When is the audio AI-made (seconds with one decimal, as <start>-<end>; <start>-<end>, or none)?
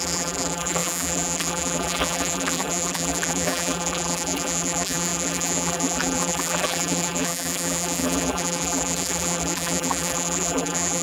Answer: 0.0-11.0